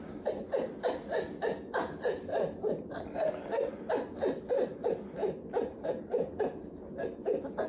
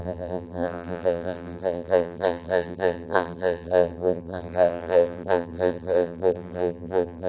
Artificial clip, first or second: second